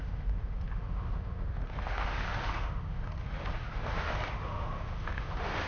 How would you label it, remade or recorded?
remade